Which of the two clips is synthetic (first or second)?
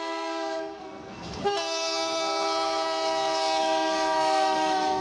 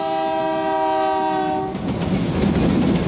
first